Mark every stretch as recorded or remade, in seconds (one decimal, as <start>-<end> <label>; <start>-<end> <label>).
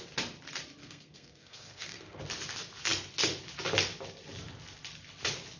0.0-0.8 recorded; 0.8-2.2 remade; 2.2-5.6 recorded